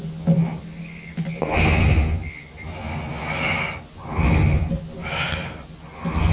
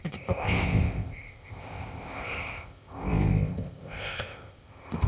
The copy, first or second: second